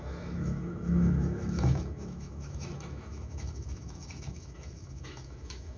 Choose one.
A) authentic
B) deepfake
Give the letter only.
B